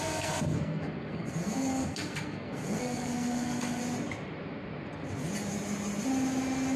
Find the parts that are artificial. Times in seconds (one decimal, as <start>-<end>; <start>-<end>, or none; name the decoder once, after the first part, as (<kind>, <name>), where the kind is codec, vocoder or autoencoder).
0.0-3.8 (codec, SNAC)